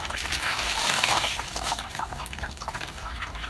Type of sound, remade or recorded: remade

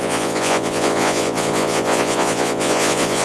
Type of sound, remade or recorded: remade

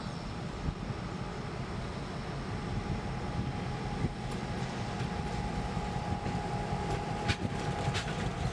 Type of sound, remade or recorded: remade